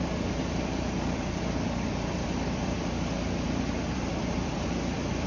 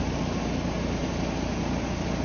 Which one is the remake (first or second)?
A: first